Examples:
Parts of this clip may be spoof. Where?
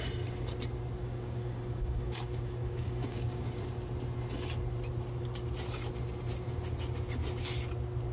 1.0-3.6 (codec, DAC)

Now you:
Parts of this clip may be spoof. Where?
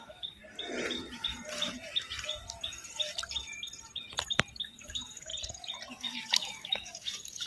0.0-0.4 (codec, DAC); 4.6-5.3; 5.9-7.5